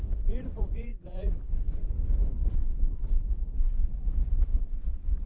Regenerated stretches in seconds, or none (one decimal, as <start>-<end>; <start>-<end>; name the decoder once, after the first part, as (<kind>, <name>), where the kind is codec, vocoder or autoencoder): 0.0-2.6 (vocoder, Vocos); 3.3-5.3